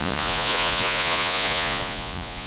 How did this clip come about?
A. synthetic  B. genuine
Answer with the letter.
A